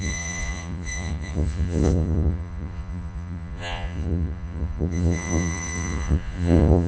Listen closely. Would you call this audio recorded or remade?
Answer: remade